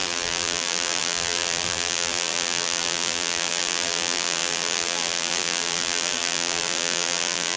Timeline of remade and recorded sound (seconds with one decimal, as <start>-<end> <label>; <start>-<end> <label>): 0.0-7.6 remade